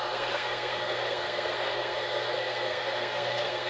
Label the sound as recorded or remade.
remade